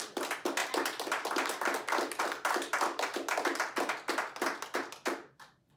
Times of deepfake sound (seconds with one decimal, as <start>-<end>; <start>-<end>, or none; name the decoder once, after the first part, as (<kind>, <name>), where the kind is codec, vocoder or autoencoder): none